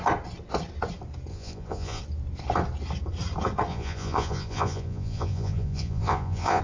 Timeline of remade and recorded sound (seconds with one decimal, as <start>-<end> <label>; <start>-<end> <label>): 0.0-1.3 recorded; 1.3-2.0 remade; 2.0-3.7 recorded; 3.7-6.6 remade